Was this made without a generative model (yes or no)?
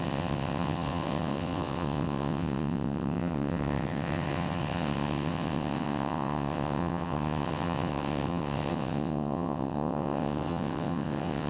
no